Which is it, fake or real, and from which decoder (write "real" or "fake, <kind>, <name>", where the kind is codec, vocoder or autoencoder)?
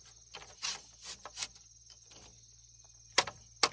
real